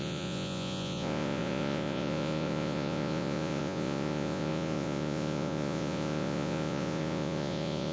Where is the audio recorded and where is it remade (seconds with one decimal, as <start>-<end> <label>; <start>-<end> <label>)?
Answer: 0.0-7.9 remade